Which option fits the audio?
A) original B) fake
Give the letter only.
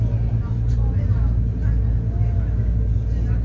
A